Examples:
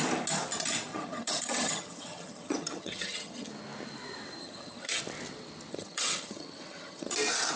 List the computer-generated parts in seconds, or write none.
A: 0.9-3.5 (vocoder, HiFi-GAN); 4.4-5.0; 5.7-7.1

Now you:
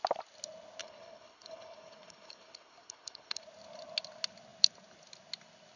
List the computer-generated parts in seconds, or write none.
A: 0.8-3.4 (codec, HILCodec)

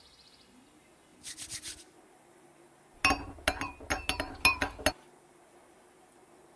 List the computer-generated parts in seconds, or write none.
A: none